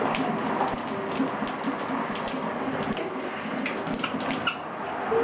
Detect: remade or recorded recorded